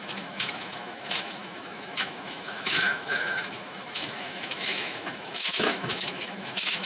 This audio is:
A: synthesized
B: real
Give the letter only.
A